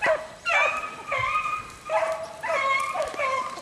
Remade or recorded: recorded